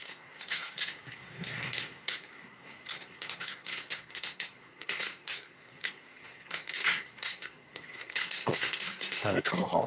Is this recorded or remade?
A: remade